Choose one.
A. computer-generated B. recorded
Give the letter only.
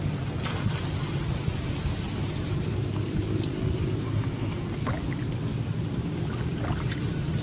B